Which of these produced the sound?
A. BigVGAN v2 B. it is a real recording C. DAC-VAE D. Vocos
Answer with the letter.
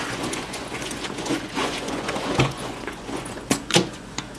D